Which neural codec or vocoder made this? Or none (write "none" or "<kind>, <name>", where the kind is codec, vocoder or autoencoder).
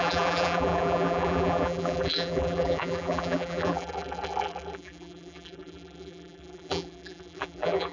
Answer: vocoder, BigVGAN v2